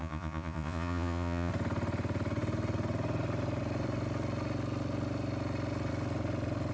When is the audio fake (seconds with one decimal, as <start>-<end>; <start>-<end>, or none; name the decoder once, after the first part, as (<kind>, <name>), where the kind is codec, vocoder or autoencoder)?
0.0-1.5 (vocoder, Vocos)